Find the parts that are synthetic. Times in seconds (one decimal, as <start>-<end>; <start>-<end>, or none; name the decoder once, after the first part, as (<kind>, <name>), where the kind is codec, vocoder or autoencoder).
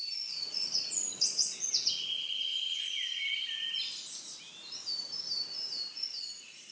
0.0-3.1 (vocoder, Vocos); 5.9-6.7